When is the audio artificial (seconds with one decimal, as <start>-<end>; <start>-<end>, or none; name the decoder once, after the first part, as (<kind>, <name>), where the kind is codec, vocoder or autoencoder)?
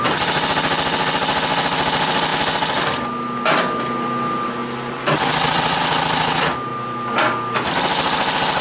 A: none